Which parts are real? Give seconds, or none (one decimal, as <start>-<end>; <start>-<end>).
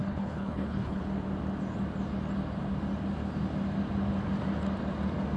1.0-5.4